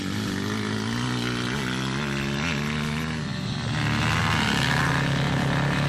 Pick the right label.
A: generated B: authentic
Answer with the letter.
B